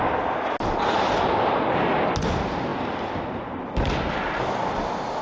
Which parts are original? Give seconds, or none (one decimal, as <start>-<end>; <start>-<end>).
0.0-5.2

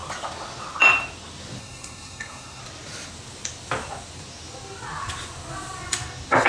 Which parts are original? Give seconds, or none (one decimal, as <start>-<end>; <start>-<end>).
0.0-1.6; 2.6-6.5

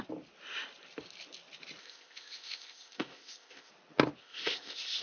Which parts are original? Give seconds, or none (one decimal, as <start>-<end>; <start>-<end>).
0.0-1.8; 3.7-4.2

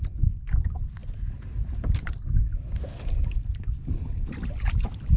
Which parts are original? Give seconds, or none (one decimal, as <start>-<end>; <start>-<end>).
0.0-5.2

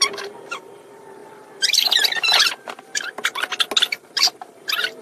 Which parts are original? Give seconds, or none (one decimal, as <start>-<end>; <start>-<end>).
2.9-3.9

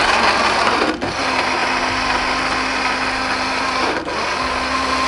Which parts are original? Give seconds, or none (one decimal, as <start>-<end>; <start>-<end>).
0.0-5.1